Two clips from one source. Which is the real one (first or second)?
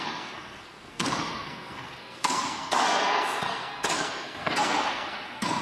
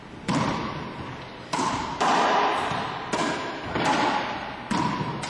second